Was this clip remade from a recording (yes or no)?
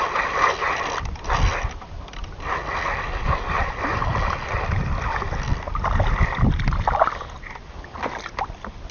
no